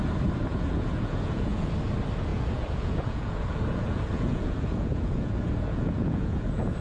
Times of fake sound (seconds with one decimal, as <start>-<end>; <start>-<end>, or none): 0.5-1.7; 2.3-6.8